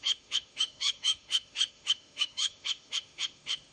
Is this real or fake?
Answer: fake